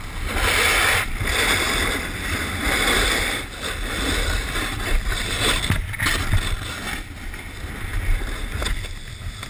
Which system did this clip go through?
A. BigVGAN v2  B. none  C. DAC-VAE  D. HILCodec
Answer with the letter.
B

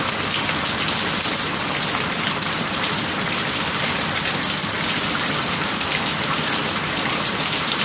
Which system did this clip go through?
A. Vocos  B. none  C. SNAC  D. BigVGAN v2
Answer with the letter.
B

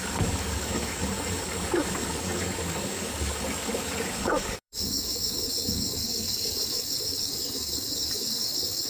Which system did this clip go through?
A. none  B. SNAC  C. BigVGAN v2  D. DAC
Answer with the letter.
D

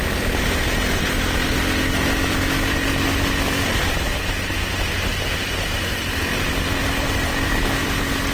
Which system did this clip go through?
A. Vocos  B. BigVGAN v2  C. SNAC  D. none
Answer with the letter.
D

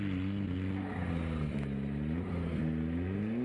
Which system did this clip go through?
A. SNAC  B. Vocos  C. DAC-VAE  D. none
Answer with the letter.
D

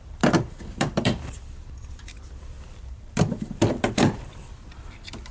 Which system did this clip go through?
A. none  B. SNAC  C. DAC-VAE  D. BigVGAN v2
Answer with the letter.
D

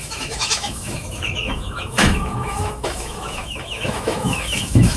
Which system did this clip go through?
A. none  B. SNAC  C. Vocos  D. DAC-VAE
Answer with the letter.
D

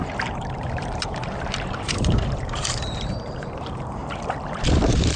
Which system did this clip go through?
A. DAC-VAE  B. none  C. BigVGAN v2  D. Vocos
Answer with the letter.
C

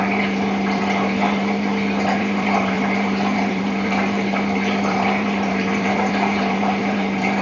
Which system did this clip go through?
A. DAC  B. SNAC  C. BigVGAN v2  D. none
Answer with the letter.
C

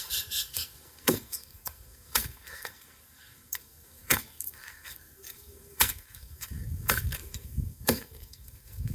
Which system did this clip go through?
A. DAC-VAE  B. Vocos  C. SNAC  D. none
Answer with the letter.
C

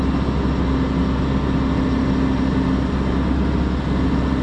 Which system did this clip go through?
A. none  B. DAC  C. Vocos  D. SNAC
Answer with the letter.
A